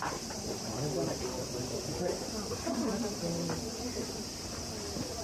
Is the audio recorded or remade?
recorded